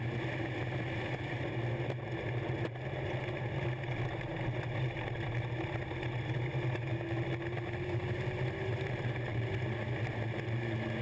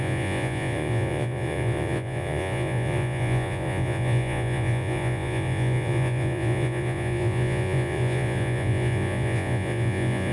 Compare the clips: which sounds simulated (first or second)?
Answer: second